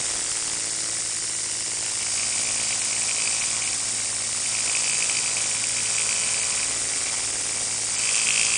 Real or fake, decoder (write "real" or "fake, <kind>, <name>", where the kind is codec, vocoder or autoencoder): real